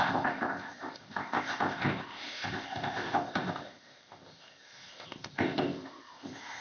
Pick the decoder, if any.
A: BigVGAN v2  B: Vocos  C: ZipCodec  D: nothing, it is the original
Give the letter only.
C